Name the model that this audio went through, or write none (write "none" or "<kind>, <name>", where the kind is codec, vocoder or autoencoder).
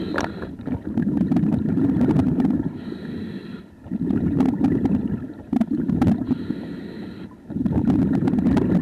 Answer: vocoder, BigVGAN v2